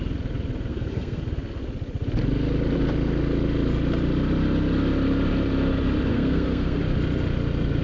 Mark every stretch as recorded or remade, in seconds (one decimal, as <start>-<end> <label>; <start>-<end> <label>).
0.0-0.7 recorded; 0.7-1.2 remade; 1.2-6.1 recorded; 6.1-6.8 remade; 6.8-7.8 recorded